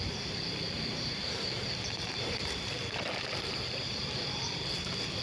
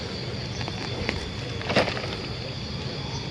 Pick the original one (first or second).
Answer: second